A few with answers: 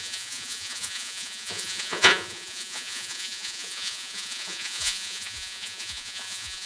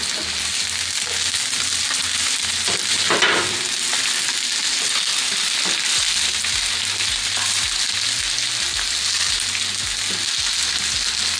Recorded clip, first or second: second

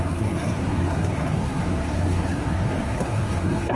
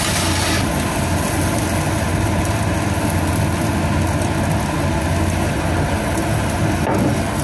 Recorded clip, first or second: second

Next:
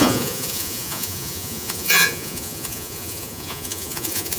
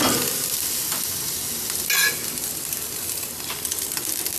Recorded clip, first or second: second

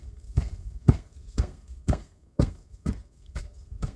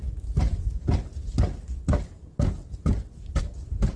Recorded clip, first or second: second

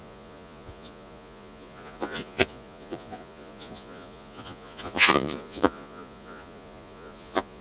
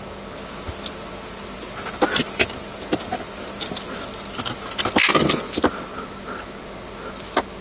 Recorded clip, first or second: second